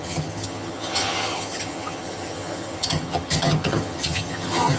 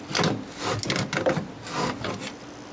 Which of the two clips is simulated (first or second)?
first